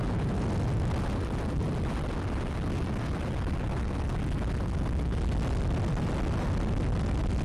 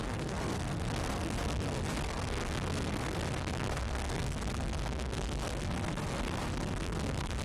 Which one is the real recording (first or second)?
first